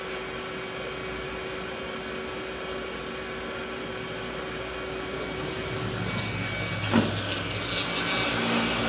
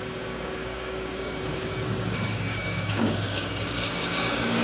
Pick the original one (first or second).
first